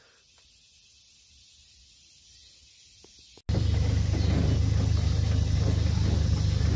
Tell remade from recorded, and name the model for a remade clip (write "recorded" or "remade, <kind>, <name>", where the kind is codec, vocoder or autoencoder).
recorded